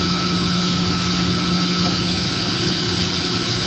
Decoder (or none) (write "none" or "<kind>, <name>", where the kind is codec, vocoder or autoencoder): codec, HILCodec